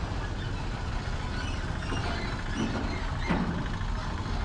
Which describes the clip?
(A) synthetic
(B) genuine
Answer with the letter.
B